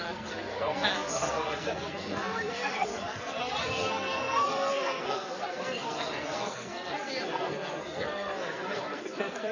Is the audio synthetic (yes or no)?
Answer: yes